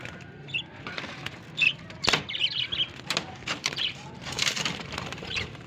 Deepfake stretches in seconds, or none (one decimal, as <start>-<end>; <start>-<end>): 0.0-0.5; 3.2-5.7